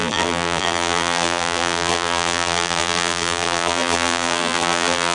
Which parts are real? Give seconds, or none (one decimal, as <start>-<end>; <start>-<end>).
none